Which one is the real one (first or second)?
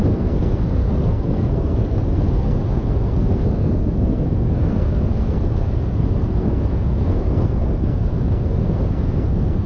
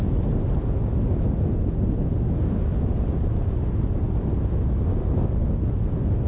second